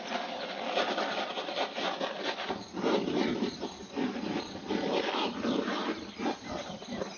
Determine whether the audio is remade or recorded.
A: recorded